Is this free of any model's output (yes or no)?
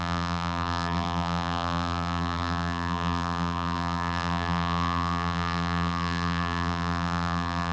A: no